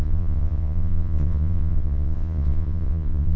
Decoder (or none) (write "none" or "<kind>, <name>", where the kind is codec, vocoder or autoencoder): vocoder, Vocos